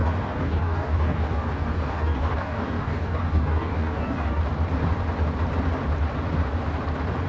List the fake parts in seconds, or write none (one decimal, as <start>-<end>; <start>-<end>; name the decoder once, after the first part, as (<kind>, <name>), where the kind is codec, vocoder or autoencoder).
0.0-4.4 (codec, DAC)